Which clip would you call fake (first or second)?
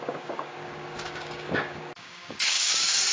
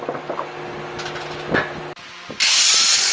first